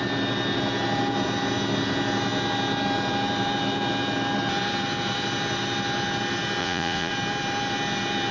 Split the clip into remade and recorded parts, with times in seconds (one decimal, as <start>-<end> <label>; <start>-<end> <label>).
0.0-6.6 recorded; 6.6-7.1 remade; 7.1-8.3 recorded